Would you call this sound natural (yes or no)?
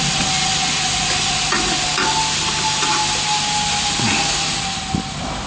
yes